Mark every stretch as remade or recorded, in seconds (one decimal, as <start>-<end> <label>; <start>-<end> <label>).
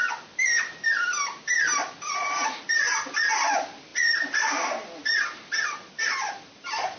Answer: 0.0-3.4 recorded; 3.4-7.0 remade